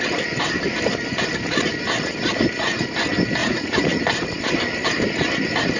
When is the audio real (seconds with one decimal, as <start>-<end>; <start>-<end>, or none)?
0.0-3.4; 4.0-5.8